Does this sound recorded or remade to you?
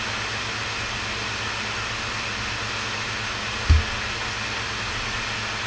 recorded